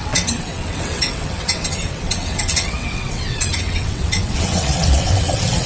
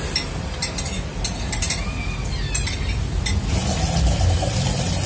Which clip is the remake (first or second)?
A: first